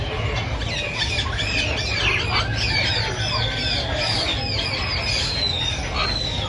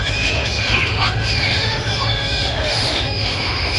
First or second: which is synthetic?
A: second